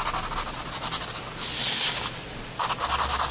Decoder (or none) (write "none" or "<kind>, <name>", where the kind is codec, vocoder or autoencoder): none